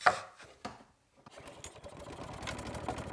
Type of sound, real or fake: real